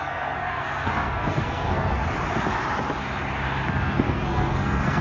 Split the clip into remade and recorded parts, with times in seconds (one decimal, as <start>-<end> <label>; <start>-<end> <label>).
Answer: 0.0-2.0 remade; 2.0-3.7 recorded; 3.7-5.0 remade